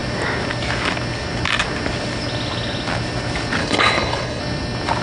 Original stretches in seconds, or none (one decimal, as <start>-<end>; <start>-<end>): 0.0-3.6; 4.4-5.0